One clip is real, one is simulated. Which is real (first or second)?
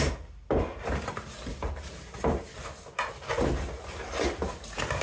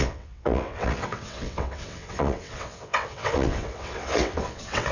first